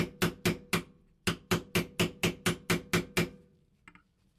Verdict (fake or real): real